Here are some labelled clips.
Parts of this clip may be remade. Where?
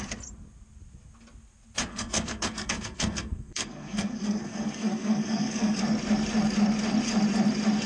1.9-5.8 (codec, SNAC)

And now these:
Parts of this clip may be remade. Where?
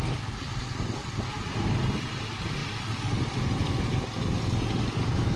none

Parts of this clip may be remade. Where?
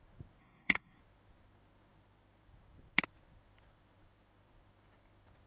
0.4-1.0 (codec, SNAC)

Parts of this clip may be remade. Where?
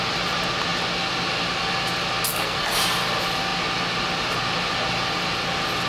2.3-2.8 (codec, SNAC)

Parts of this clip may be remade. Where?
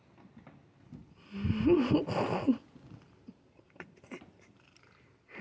none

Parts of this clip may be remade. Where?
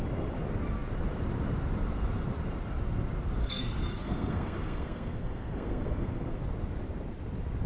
3.4-6.4 (codec, SNAC)